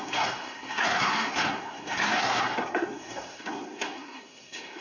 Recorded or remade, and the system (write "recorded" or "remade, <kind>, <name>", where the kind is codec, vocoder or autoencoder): remade, codec, SNAC